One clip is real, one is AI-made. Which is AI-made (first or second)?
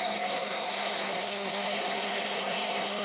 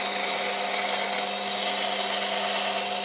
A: first